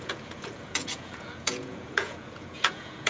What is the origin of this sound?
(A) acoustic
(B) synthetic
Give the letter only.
B